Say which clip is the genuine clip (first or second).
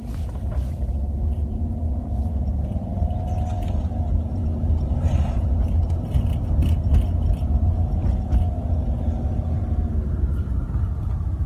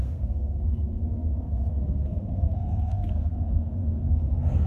first